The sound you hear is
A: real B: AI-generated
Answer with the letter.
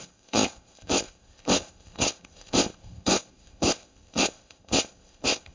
B